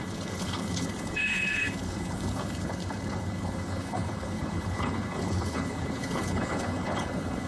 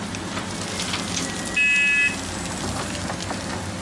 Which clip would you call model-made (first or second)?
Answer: first